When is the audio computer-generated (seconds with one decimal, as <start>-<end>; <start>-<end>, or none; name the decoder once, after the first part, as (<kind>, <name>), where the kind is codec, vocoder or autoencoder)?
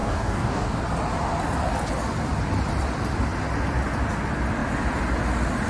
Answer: 0.0-0.8 (codec, DAC)